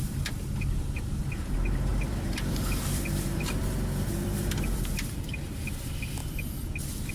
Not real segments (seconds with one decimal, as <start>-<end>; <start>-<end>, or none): 1.9-5.3